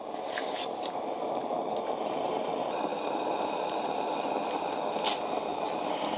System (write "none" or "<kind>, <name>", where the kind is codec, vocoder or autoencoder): none